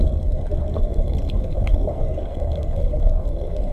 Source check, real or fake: fake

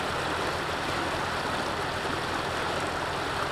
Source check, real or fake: real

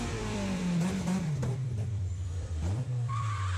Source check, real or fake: fake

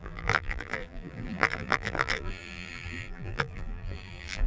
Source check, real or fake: fake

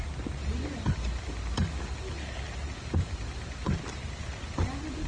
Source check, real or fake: real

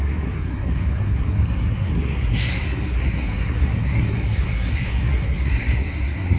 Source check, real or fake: fake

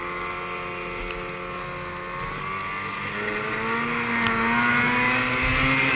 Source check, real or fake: real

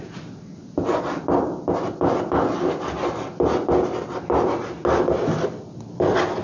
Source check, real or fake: real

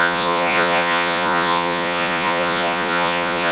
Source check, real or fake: fake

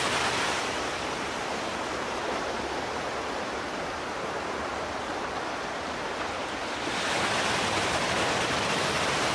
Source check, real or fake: real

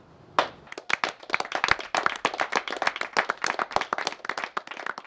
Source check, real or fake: real